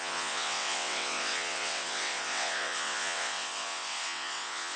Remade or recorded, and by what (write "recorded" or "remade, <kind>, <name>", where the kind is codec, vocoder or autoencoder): remade, vocoder, WaveNeXt